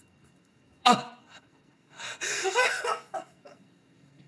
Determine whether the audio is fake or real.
fake